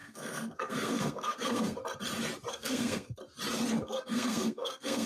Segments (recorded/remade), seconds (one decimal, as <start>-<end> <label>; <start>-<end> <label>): 0.0-1.8 remade; 1.8-2.5 recorded; 2.5-3.2 remade; 3.2-3.8 recorded; 3.8-5.1 remade